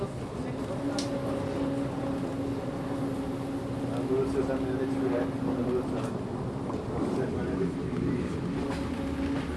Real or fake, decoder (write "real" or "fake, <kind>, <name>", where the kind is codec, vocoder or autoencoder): real